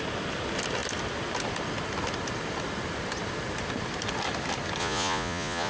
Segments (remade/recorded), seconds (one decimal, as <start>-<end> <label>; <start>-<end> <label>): 0.0-4.8 recorded; 4.8-5.7 remade